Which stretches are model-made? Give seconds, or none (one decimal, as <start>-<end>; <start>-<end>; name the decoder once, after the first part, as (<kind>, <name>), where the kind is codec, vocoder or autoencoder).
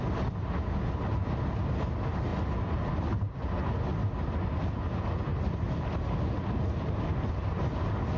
5.3-7.3 (vocoder, BigVGAN v2)